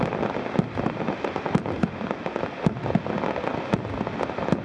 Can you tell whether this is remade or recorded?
recorded